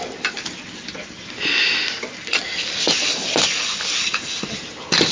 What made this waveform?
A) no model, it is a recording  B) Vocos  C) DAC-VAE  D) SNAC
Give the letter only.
A